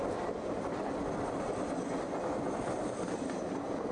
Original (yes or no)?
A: yes